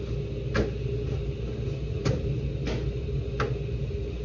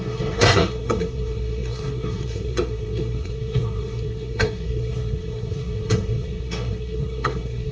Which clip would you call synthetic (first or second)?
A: second